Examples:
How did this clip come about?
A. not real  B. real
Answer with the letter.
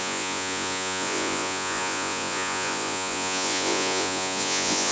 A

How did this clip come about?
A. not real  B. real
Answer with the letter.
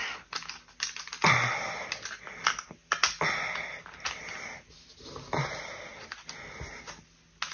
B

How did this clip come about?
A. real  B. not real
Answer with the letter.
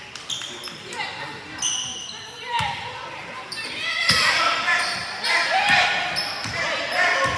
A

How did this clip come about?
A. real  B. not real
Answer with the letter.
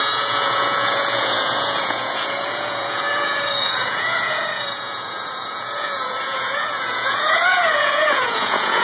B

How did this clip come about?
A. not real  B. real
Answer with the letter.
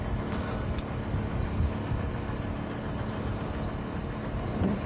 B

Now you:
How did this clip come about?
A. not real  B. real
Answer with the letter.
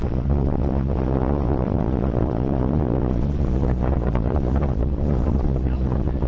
A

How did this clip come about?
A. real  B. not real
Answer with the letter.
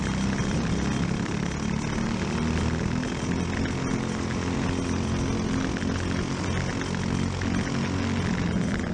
A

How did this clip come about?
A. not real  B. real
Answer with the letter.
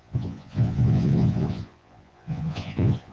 A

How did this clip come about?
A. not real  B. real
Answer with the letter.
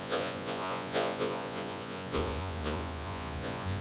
A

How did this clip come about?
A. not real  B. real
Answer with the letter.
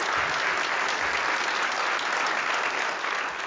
B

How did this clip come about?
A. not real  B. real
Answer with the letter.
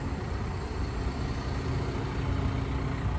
B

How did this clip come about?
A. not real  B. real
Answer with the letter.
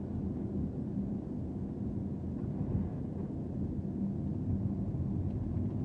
B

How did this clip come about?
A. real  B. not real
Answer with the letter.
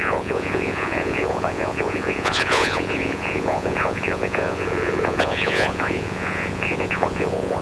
B